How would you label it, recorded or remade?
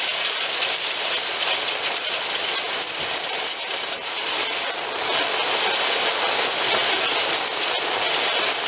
recorded